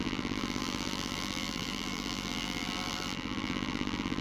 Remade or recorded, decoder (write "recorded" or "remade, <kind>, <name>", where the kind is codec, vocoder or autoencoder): remade, vocoder, BigVGAN v2